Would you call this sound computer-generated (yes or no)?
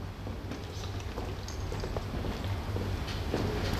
no